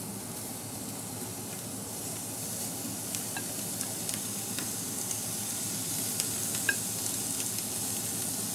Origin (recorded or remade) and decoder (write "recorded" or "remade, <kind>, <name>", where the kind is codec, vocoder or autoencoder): recorded